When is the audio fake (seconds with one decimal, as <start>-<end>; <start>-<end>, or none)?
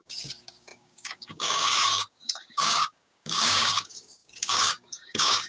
0.0-5.5